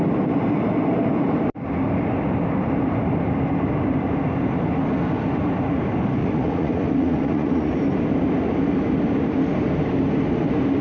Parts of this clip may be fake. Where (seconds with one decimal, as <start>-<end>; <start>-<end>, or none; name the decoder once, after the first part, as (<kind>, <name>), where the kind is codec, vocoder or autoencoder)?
6.2-7.7 (vocoder, Vocos)